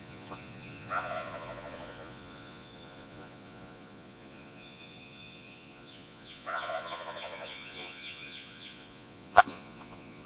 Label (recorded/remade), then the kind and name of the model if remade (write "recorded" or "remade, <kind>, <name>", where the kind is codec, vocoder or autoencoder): remade, vocoder, Vocos